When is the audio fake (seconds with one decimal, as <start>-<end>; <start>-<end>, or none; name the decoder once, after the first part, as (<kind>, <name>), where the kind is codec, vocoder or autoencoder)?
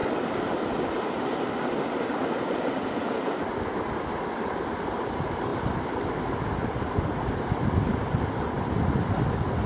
5.5-7.3 (vocoder, BigVGAN v2)